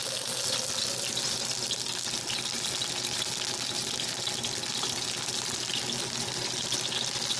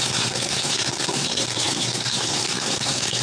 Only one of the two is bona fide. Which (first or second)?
first